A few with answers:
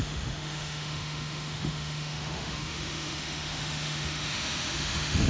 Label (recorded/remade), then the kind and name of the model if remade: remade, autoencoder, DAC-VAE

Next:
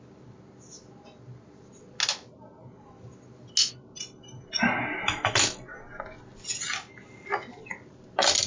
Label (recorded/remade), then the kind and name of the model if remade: recorded